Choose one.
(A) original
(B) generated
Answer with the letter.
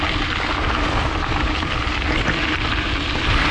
A